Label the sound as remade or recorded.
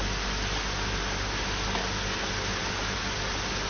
recorded